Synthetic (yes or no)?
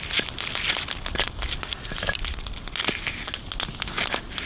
no